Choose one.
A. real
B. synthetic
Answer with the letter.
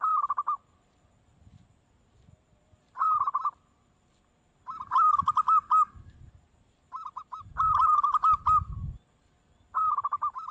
A